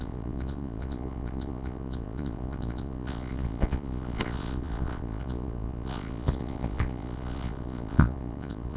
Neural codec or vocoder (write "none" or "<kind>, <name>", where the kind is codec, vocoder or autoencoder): vocoder, Vocos